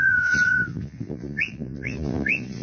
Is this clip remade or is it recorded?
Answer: remade